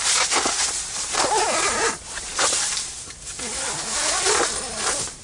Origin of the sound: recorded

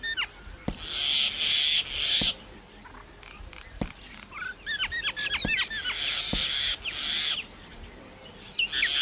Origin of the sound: recorded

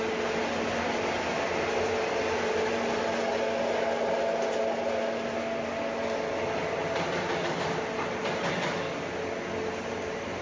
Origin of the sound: recorded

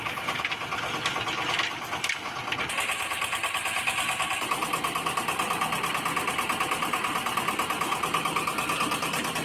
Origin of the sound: recorded